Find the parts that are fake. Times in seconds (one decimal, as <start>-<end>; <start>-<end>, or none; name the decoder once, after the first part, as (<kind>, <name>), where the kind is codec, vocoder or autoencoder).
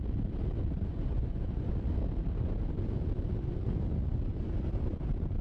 0.9-1.7 (vocoder, Vocos)